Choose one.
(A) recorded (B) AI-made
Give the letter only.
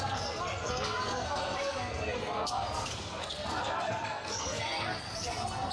B